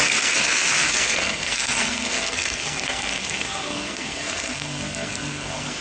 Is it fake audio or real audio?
fake